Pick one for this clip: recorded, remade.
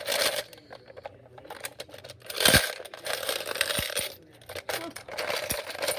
recorded